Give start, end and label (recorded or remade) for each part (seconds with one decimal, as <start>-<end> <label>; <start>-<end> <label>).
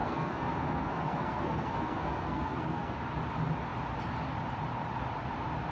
0.0-3.0 remade; 3.0-5.7 recorded